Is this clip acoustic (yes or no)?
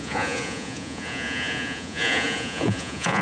no